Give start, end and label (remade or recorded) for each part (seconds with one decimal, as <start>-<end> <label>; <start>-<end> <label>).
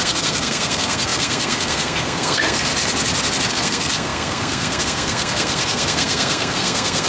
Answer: 0.0-2.7 remade; 2.7-3.5 recorded; 3.5-7.1 remade